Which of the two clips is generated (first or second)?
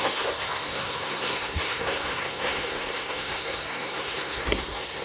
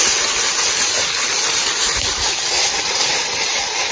first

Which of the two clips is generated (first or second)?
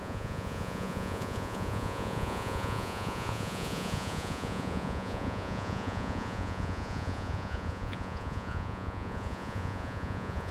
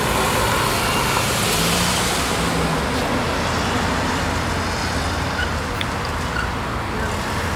first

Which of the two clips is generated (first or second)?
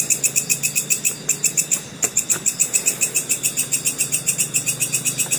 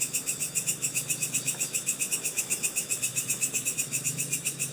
second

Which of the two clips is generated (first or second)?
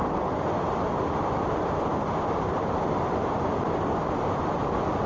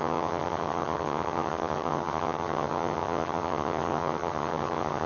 second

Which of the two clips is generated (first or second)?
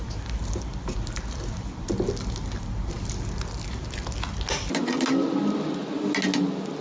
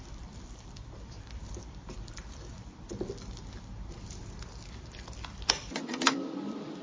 second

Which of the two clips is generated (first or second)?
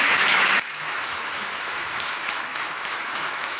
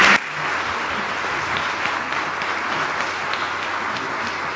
first